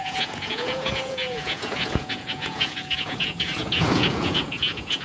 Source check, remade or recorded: remade